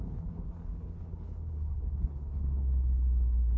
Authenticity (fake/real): fake